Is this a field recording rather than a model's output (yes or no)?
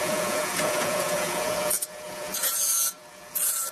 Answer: no